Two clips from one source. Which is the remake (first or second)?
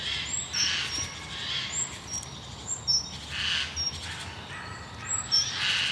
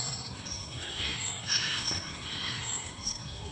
second